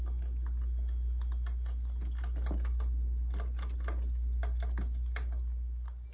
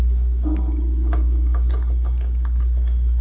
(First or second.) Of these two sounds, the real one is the first